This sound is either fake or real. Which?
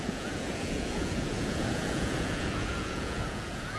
fake